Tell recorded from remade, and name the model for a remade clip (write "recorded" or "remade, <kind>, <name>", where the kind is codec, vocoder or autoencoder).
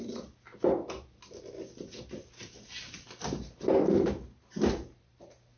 recorded